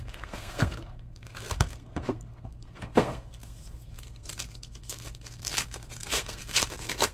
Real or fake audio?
fake